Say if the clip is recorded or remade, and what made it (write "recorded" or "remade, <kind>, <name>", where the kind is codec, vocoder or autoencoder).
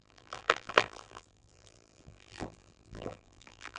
remade, vocoder, BigVGAN v2